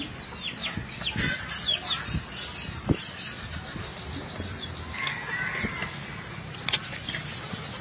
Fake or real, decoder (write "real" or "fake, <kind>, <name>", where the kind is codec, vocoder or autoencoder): real